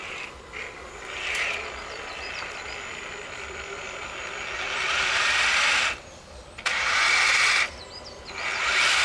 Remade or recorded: remade